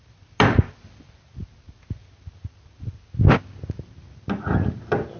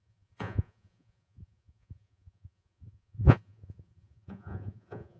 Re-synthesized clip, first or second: second